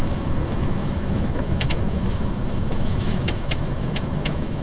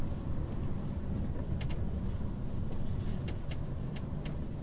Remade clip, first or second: first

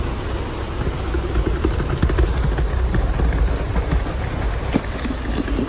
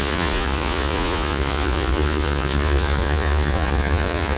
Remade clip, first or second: second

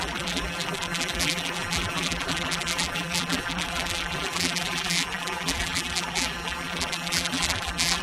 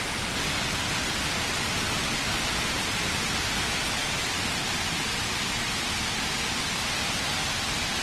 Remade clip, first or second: first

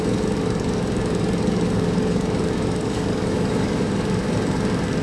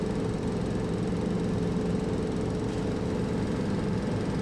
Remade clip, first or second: first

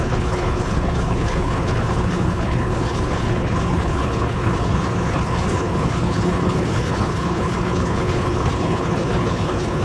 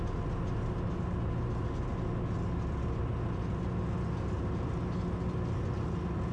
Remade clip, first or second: first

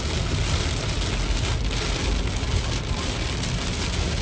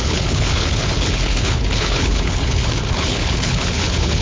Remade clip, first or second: second